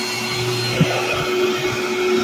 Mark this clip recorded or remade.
recorded